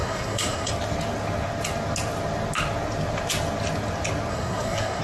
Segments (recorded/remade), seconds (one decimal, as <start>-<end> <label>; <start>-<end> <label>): 0.0-0.7 remade; 0.7-4.3 recorded; 4.3-5.0 remade